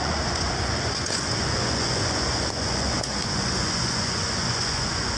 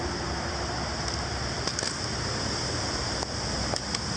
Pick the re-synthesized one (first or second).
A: first